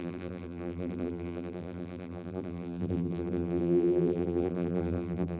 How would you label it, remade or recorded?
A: remade